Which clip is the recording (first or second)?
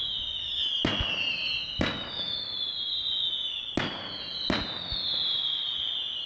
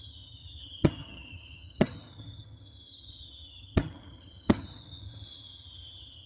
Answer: first